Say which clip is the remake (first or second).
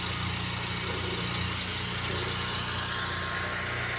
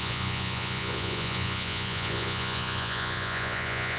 second